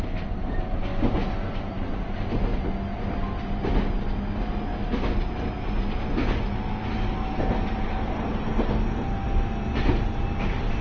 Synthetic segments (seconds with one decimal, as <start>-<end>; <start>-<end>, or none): 0.9-1.9

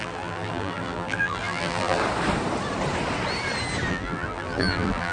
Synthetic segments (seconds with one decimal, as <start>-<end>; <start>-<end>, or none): 0.0-2.0; 3.9-5.1